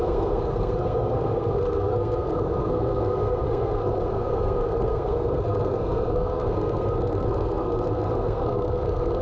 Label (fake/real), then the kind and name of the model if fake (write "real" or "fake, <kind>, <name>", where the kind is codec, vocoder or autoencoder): fake, codec, SNAC